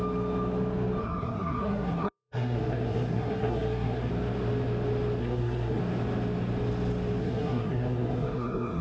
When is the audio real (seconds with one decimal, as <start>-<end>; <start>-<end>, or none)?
0.0-1.0; 4.1-5.2; 5.8-7.2